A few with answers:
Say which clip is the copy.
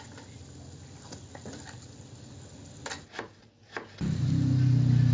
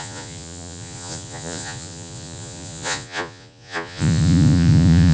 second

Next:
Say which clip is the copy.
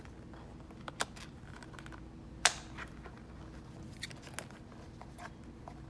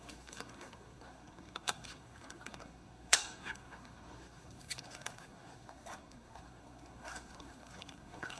second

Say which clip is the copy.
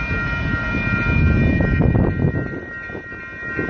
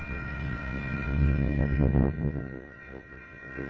second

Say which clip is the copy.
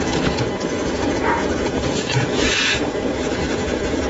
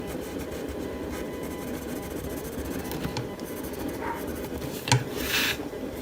first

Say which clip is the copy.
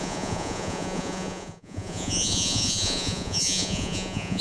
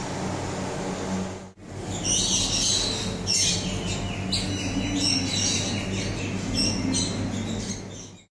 first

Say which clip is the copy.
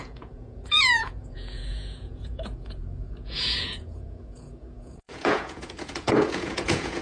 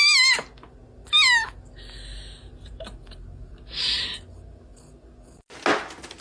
first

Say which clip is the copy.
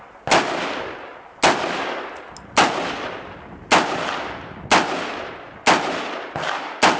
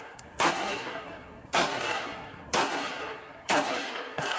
second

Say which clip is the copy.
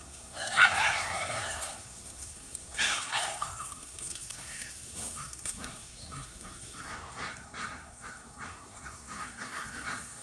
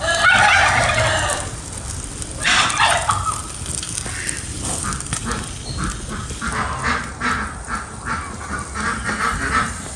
first